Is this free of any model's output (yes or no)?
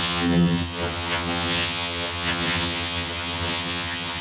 no